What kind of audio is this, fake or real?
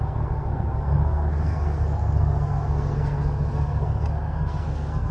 fake